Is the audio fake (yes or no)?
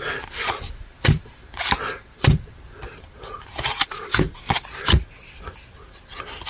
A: no